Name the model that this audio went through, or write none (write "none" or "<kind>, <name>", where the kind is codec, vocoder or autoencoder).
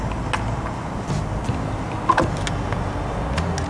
none